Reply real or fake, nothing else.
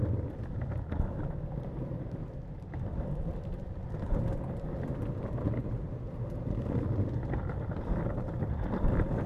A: fake